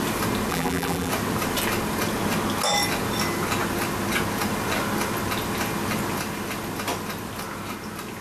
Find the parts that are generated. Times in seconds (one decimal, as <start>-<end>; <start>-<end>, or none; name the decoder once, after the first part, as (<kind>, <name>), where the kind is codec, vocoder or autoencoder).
0.5-1.1 (vocoder, BigVGAN v2)